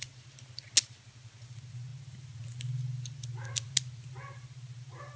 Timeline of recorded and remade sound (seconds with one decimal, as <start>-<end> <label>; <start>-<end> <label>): 0.0-5.2 recorded